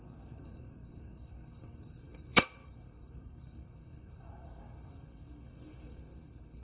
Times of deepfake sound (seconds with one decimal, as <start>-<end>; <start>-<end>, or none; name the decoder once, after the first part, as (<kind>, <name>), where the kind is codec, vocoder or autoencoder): 0.0-6.6 (codec, SNAC)